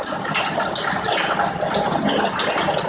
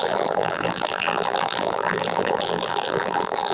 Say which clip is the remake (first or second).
second